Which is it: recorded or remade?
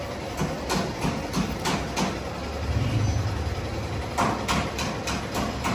recorded